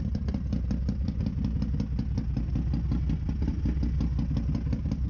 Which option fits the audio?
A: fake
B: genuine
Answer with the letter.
B